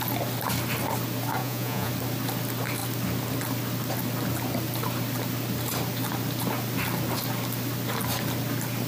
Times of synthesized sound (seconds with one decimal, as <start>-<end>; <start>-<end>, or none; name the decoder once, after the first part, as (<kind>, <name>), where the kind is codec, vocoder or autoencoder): 1.4-1.9 (vocoder, Vocos)